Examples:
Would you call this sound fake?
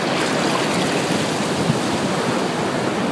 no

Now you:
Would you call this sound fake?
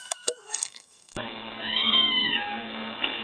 yes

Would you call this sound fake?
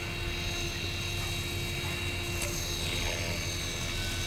no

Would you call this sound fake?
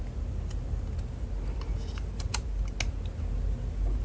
no